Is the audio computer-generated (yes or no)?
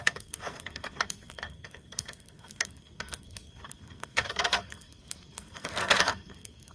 yes